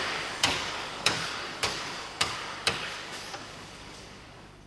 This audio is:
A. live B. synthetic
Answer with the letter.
B